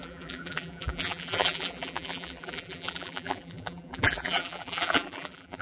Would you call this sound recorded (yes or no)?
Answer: no